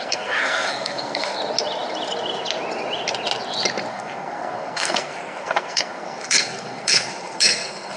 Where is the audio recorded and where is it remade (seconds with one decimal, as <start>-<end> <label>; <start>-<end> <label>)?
0.0-1.4 remade; 1.4-3.9 recorded; 3.9-8.0 remade